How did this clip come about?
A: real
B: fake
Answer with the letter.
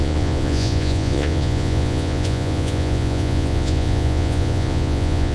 B